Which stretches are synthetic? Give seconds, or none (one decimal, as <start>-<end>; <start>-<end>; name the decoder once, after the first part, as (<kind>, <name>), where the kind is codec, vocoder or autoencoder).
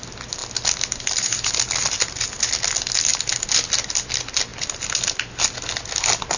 none